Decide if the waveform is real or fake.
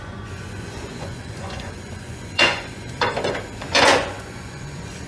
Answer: fake